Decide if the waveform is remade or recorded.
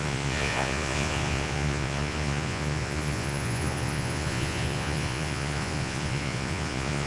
remade